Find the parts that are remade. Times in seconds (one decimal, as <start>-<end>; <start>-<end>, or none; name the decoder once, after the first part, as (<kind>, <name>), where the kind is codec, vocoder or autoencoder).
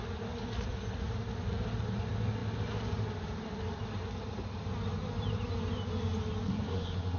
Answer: 6.5-7.2 (codec, SNAC)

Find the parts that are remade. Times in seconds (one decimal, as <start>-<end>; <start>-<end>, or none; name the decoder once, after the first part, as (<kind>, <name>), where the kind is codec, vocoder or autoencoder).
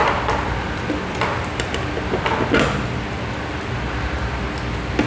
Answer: none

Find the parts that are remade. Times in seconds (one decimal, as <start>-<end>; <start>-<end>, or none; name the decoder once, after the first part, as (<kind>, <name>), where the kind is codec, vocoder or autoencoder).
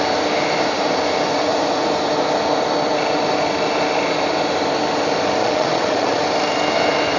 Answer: 5.4-6.2 (vocoder, Vocos)